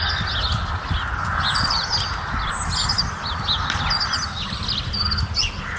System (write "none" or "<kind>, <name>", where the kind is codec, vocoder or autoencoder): none